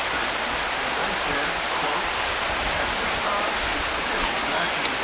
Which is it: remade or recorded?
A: recorded